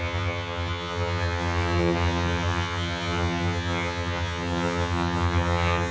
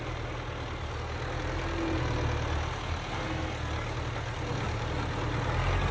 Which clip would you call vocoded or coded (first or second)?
first